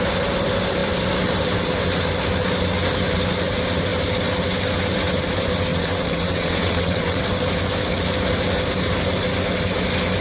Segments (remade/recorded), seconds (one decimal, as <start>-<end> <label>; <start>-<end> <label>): 0.0-5.7 recorded; 5.7-7.2 remade; 7.2-10.2 recorded